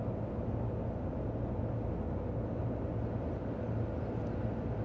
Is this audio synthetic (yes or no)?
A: no